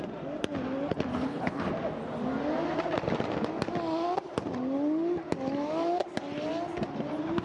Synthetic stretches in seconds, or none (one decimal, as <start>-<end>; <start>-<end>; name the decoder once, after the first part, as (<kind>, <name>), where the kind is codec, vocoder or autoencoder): 1.1-1.7 (codec, HILCodec)